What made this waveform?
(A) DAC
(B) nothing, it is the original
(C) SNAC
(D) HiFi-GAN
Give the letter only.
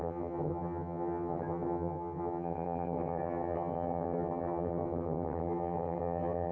D